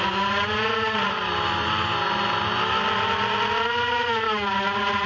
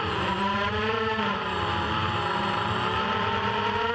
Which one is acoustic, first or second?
first